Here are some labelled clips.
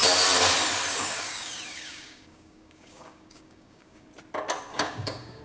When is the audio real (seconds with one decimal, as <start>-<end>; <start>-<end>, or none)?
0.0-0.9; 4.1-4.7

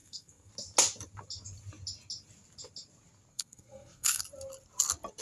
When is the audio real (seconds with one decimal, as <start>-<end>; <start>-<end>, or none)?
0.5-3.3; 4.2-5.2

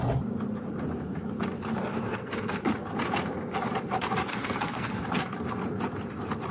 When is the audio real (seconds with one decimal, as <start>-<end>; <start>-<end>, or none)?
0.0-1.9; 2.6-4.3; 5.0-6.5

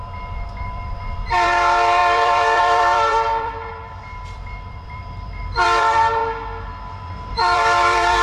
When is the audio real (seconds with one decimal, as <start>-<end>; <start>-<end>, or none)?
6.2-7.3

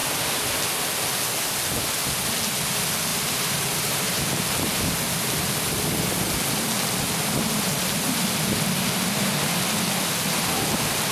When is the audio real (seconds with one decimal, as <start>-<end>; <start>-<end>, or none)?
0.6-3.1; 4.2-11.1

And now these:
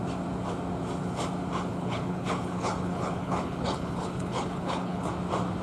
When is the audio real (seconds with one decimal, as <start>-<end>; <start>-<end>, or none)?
0.0-1.7; 5.1-5.6